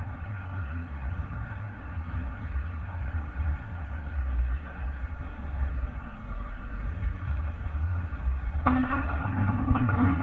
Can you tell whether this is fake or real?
fake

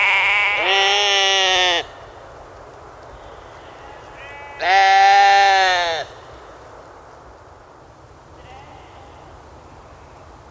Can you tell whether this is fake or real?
real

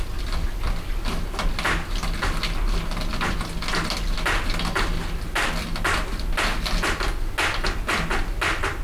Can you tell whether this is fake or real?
real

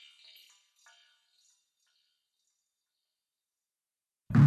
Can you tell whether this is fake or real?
real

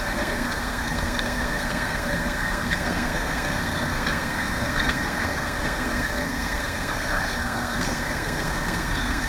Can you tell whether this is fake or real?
fake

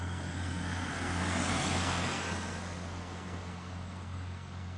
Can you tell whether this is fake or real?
fake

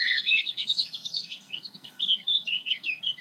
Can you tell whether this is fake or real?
fake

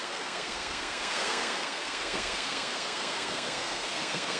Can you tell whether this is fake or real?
fake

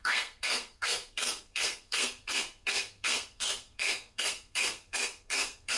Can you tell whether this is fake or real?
fake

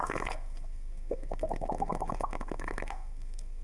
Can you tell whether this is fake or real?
fake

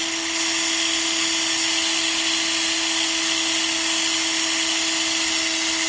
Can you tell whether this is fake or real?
real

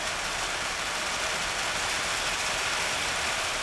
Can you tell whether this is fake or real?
real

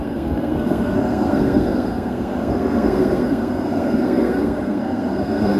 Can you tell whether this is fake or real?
fake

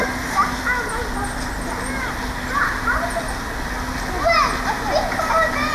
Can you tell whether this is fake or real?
real